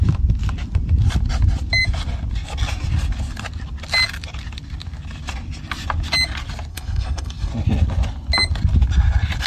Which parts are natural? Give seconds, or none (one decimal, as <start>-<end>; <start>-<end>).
0.0-6.7; 7.5-9.5